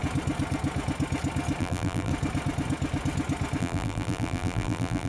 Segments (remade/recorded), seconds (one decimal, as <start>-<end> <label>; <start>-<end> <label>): 0.0-1.6 recorded; 1.6-2.1 remade; 2.1-3.6 recorded; 3.6-5.1 remade

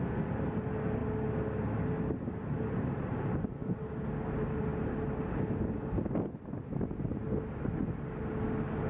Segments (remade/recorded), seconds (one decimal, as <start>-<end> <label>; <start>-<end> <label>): 0.0-8.9 recorded

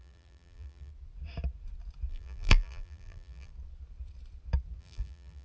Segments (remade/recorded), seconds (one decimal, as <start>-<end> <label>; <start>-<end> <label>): 0.0-0.9 remade; 0.9-2.1 recorded; 2.1-3.5 remade; 3.5-4.8 recorded; 4.8-5.4 remade

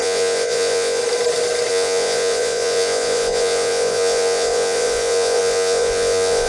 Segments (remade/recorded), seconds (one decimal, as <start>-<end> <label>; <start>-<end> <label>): 0.0-1.0 remade; 1.0-1.7 recorded; 1.7-6.5 remade

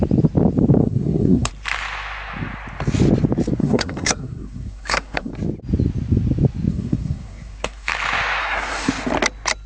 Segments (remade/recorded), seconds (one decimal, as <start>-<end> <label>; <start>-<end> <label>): 0.0-0.8 recorded; 0.8-1.5 remade; 1.5-3.6 recorded; 3.6-5.3 remade; 5.3-6.7 recorded; 6.7-7.9 remade; 7.9-8.4 recorded; 8.4-8.9 remade; 8.9-9.7 recorded

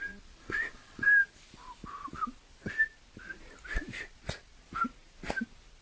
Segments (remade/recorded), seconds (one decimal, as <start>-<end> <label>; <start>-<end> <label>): 0.0-0.4 recorded; 0.4-1.1 remade; 1.1-5.8 recorded

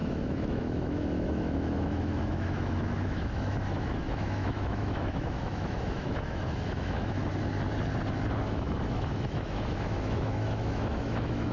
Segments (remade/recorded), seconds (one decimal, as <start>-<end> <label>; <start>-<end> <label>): 0.0-7.2 remade; 7.2-8.4 recorded; 8.4-11.5 remade

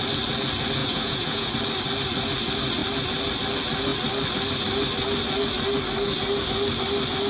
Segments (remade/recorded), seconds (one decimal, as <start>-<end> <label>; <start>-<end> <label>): 0.0-0.8 recorded; 0.8-1.5 remade; 1.5-7.3 recorded